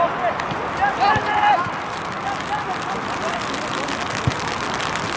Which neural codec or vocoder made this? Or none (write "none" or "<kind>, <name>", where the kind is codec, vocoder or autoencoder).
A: none